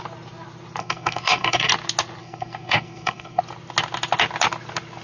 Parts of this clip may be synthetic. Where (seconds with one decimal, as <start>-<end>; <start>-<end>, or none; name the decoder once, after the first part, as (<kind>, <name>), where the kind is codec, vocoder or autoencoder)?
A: 0.8-1.7 (codec, SNAC); 2.2-3.4